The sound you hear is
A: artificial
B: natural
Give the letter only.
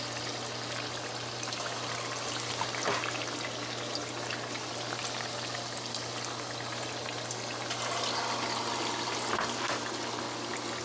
B